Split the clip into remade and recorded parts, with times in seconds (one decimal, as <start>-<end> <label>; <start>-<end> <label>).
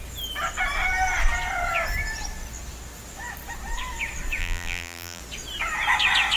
0.0-4.4 recorded; 4.4-5.2 remade; 5.2-6.4 recorded